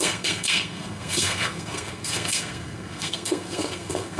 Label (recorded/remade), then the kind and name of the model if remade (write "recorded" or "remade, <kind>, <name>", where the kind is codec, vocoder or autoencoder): remade, codec, SNAC